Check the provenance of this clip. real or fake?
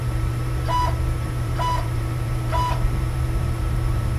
fake